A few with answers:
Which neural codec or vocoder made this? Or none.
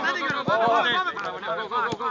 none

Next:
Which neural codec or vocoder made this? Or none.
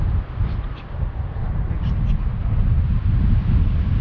none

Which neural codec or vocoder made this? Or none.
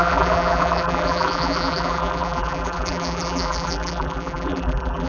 vocoder, BigVGAN v2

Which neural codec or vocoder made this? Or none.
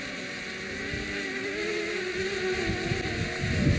none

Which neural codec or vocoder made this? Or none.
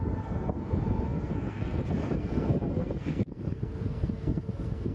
codec, SNAC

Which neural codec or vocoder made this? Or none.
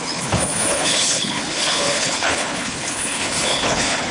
codec, HILCodec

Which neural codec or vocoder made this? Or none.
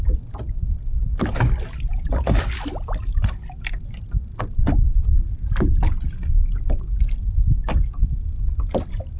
none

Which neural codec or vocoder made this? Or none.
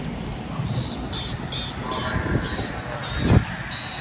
none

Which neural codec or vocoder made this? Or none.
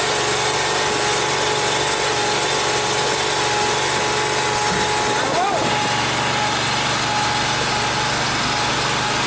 none